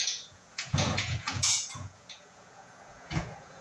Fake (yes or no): yes